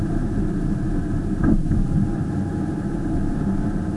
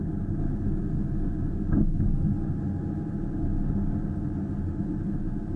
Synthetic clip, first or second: first